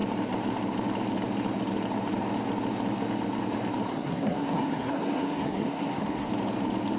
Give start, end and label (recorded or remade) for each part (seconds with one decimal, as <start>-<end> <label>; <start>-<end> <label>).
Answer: 0.0-3.9 recorded; 3.9-6.3 remade; 6.3-7.0 recorded